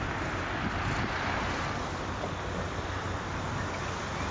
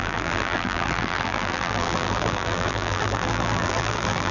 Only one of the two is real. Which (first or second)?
first